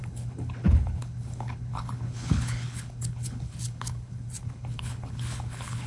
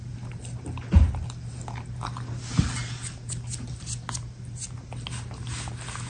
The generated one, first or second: first